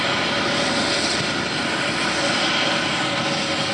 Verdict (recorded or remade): recorded